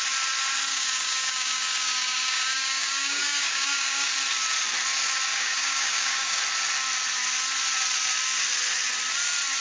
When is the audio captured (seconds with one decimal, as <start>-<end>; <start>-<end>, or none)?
0.0-0.7; 4.1-5.3; 6.4-9.6